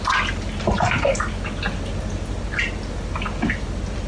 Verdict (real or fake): real